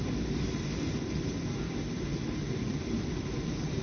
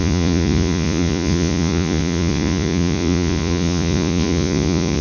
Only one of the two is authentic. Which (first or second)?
first